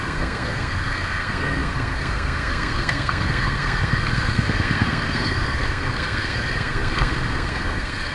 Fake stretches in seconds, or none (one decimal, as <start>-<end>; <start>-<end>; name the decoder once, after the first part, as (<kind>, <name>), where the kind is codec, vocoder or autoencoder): 0.0-8.1 (codec, SNAC)